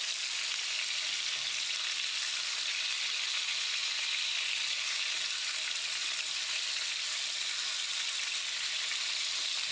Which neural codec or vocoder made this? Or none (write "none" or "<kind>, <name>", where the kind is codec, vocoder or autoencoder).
none